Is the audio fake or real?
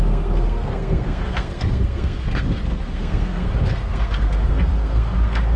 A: fake